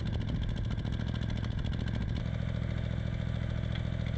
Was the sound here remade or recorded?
recorded